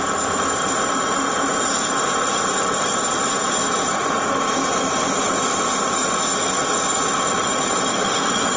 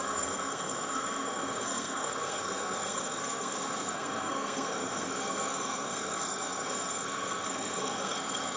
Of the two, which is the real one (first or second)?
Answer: first